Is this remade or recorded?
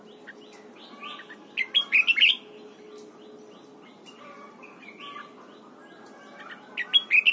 recorded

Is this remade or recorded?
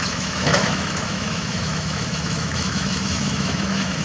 remade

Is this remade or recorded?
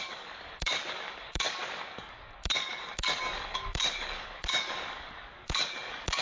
remade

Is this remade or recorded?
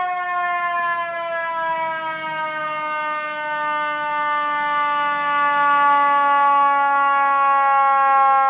recorded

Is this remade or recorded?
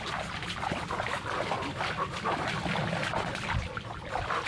recorded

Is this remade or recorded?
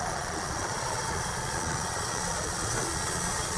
remade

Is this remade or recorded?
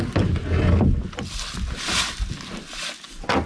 recorded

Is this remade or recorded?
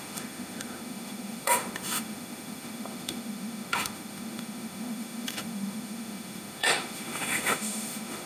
remade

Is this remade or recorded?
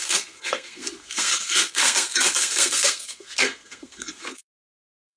remade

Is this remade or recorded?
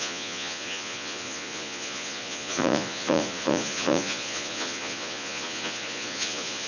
remade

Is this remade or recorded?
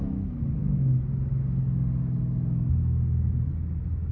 recorded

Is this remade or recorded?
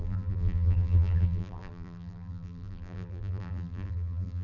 remade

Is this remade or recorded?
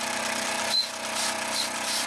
recorded